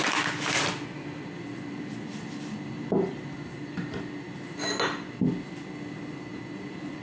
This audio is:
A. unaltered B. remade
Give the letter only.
A